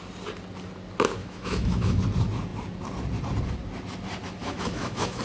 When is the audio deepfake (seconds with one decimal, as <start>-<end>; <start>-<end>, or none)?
1.2-2.0; 4.4-5.2